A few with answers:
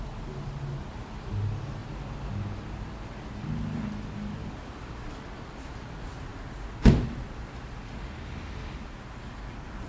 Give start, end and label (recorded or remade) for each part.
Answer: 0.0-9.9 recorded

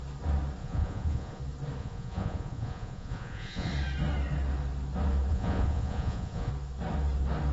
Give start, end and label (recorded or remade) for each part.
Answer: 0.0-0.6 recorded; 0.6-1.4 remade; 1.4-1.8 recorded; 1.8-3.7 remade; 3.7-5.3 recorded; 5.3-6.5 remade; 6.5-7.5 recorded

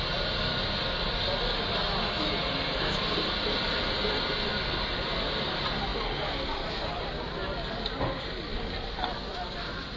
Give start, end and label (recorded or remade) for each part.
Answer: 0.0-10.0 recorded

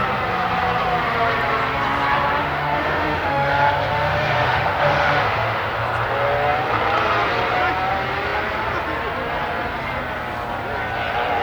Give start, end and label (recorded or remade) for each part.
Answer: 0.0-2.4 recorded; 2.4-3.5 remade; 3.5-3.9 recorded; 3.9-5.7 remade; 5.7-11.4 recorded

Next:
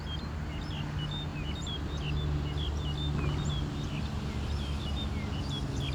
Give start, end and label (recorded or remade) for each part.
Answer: 0.0-5.9 recorded

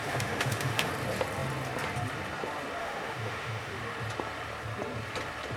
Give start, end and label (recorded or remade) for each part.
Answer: 0.0-0.9 remade; 0.9-2.8 recorded; 2.8-3.8 remade; 3.8-5.6 recorded

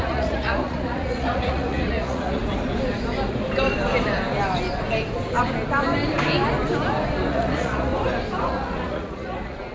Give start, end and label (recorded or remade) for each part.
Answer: 0.0-2.4 remade; 2.4-7.3 recorded; 7.3-7.9 remade; 7.9-8.5 recorded; 8.5-9.7 remade